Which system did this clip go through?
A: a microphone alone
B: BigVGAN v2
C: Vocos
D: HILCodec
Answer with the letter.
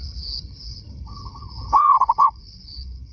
D